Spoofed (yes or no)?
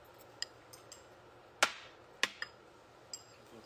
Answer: no